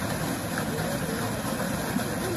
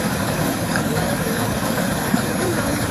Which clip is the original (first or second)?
first